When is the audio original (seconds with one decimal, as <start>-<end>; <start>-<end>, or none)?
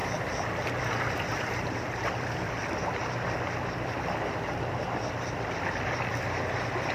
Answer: 0.0-6.9